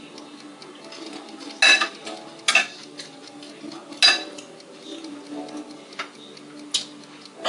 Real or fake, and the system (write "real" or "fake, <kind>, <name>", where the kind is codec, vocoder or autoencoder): real